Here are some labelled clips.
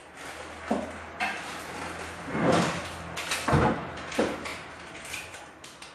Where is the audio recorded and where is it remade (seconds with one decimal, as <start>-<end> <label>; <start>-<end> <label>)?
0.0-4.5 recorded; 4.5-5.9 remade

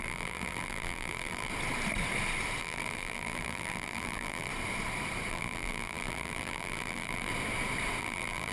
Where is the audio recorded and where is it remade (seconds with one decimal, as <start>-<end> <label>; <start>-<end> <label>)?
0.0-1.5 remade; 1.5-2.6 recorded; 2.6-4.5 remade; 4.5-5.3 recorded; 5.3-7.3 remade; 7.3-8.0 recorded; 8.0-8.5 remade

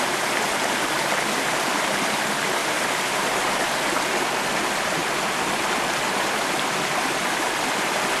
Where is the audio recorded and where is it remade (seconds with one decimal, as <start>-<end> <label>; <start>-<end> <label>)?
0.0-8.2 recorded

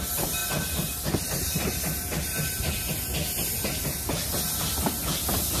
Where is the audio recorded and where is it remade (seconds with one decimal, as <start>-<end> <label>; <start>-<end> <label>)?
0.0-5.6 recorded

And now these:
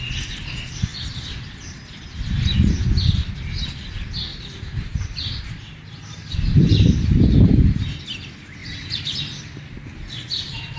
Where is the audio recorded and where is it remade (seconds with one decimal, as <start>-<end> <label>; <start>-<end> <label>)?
0.0-4.3 recorded; 4.3-8.0 remade; 8.0-8.6 recorded; 8.6-9.2 remade; 9.2-10.8 recorded

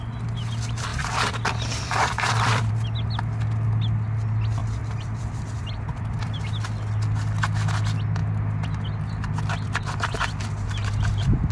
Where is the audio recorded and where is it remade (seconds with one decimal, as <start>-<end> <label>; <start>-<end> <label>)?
0.0-0.9 recorded; 0.9-2.7 remade; 2.7-4.6 recorded; 4.6-6.3 remade; 6.3-11.5 recorded